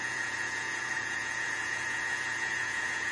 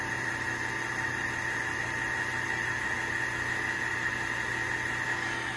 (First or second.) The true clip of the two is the second